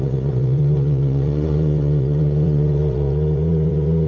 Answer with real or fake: fake